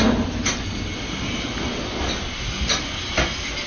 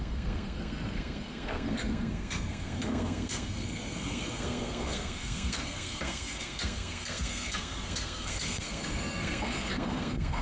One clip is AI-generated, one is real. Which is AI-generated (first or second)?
second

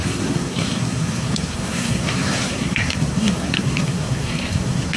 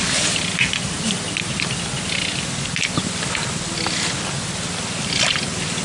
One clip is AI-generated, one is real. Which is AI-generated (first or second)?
first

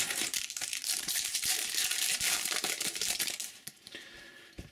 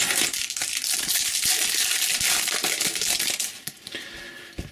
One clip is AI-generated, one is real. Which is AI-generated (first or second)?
first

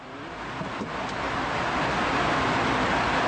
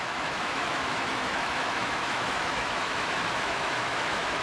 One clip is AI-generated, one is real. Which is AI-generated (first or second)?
second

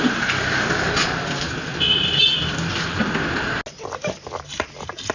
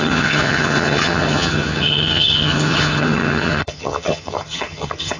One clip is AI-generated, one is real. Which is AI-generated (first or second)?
second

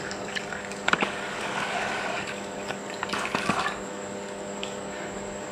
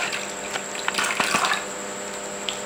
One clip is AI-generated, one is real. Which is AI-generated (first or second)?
first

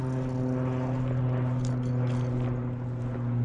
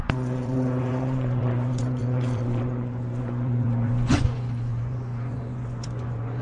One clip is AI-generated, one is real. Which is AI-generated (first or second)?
second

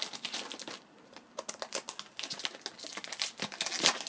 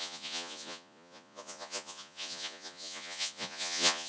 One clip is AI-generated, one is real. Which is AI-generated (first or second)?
second